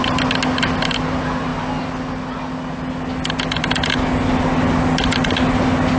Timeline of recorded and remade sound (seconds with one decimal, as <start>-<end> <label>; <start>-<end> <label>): 0.0-6.0 recorded

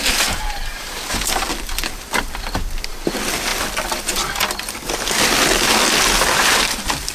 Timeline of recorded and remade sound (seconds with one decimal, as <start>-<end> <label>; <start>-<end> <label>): 0.0-3.5 remade; 3.5-6.3 recorded; 6.3-7.1 remade

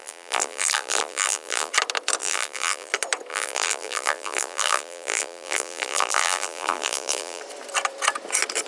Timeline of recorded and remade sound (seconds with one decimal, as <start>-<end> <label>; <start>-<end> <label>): 0.0-1.7 remade; 1.7-2.2 recorded; 2.2-2.9 remade; 2.9-3.3 recorded; 3.3-7.4 remade; 7.4-8.7 recorded

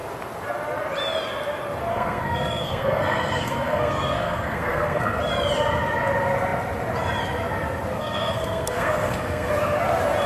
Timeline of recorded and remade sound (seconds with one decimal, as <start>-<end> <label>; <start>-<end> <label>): 0.0-1.9 recorded; 1.9-5.2 remade; 5.2-8.0 recorded; 8.0-9.5 remade; 9.5-10.3 recorded

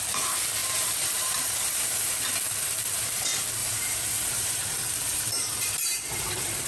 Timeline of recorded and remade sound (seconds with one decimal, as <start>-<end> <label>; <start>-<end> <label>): 0.0-0.6 recorded; 0.6-2.1 remade; 2.1-3.6 recorded; 3.6-6.7 remade

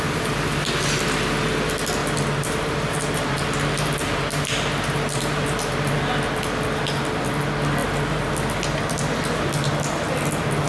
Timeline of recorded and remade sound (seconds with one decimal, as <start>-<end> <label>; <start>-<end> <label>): 0.0-2.0 recorded; 2.0-5.9 remade; 5.9-7.8 recorded; 7.8-8.3 remade; 8.3-10.7 recorded

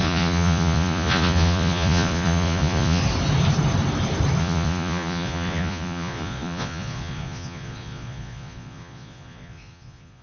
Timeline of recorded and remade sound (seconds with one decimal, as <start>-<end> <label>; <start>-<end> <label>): 0.0-3.0 remade; 3.0-4.4 recorded; 4.4-10.2 remade